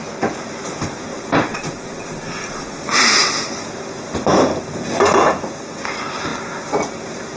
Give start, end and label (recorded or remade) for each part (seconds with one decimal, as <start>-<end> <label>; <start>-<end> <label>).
0.0-1.5 recorded; 1.5-2.8 remade; 2.8-7.4 recorded